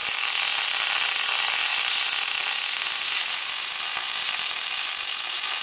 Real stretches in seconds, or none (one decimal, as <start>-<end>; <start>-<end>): 0.0-5.6